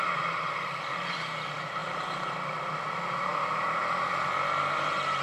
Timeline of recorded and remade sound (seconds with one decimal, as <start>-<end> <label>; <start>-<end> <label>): 0.0-5.2 recorded